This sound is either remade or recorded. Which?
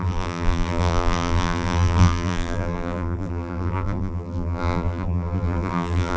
remade